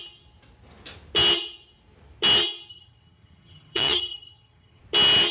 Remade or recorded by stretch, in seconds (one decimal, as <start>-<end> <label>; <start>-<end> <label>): 0.0-2.7 recorded; 2.7-4.8 remade; 4.8-5.3 recorded